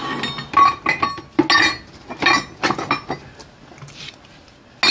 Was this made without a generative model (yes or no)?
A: yes